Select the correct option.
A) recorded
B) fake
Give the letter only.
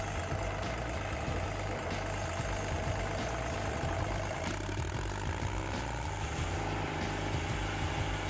A